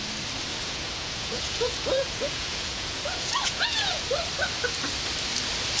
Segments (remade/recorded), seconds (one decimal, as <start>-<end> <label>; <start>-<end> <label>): 0.0-0.5 recorded; 0.5-4.0 remade; 4.0-5.8 recorded